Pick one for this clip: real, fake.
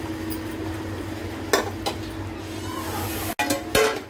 real